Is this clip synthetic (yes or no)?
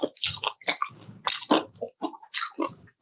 no